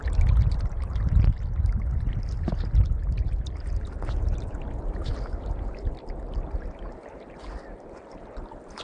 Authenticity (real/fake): real